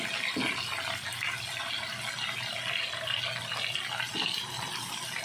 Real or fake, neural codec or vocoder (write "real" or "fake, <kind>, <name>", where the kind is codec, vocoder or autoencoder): real